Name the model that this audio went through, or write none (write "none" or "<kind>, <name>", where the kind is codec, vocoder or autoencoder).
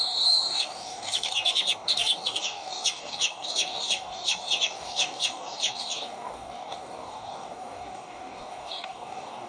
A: codec, DAC